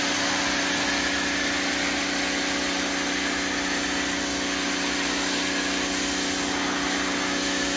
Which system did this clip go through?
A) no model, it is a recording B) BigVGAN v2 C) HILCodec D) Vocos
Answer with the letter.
A